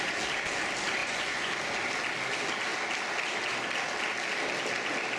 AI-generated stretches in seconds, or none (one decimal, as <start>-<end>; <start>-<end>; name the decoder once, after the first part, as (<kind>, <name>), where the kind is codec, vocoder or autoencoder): 1.0-1.5 (vocoder, Vocos)